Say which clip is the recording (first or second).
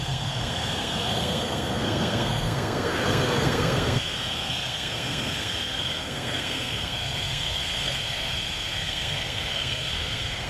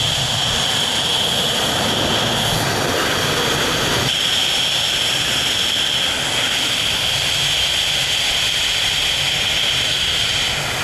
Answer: second